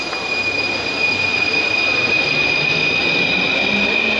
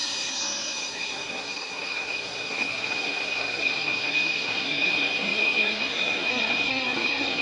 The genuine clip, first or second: first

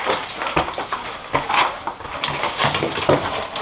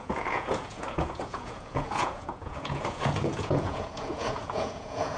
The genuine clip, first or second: first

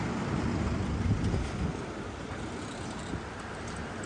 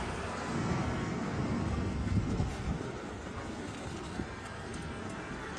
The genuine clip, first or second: first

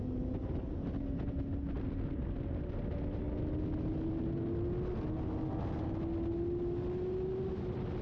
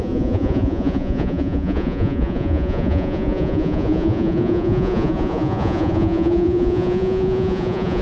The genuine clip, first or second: first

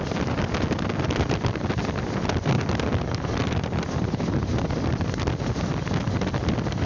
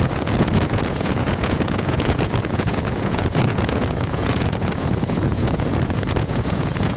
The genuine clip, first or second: first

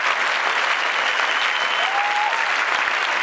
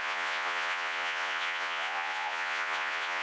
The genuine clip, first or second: first